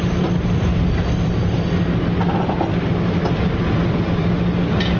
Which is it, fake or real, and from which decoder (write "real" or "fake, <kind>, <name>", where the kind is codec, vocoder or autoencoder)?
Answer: real